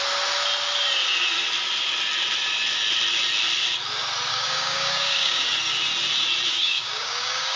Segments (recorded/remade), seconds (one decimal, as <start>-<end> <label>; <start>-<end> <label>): 0.0-4.3 recorded; 4.3-5.4 remade; 5.4-6.5 recorded; 6.5-7.6 remade